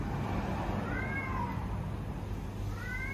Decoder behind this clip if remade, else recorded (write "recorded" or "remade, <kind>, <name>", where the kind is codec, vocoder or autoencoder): recorded